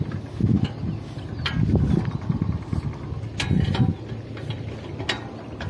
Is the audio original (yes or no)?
yes